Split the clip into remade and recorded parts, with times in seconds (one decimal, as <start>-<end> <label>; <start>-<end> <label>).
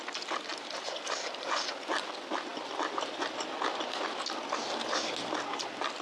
0.0-6.0 recorded